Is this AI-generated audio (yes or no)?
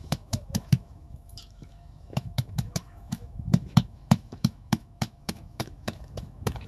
yes